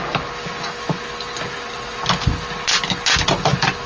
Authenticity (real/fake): real